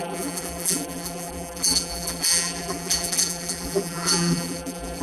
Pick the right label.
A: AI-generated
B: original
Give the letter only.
A